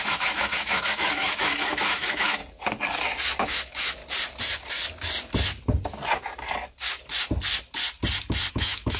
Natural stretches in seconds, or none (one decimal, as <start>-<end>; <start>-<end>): 2.4-3.4; 4.0-8.5